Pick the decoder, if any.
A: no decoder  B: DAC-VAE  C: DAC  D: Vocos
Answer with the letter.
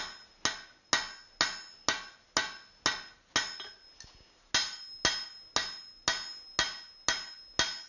A